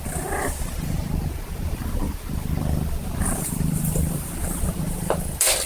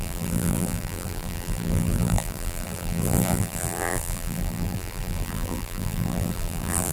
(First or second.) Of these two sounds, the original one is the first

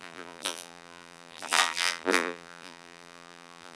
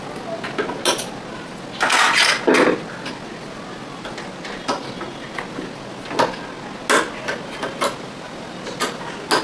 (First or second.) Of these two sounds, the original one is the second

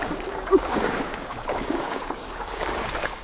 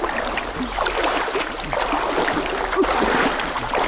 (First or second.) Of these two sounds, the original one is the second